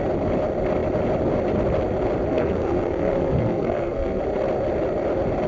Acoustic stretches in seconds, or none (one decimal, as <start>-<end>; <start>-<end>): 0.0-2.3; 4.2-5.5